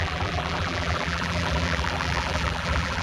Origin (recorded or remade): remade